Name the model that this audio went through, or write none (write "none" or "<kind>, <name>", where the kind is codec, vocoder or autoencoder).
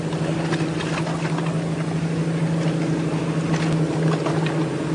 none